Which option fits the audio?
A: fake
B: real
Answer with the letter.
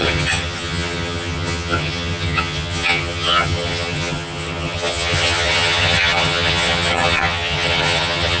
A